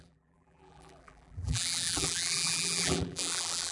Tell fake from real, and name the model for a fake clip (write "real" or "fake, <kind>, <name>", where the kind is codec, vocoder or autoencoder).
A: fake, vocoder, BigVGAN v2